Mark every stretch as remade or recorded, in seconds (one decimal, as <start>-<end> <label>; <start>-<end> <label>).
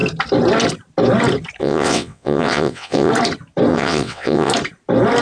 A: 0.0-1.6 recorded; 1.6-3.1 remade; 3.1-3.7 recorded; 3.7-4.5 remade; 4.5-5.2 recorded